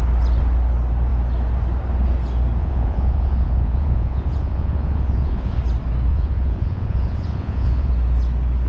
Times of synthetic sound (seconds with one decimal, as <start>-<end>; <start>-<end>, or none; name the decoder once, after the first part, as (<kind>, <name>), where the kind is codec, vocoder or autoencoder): 2.6-5.6 (vocoder, Vocos); 6.1-7.9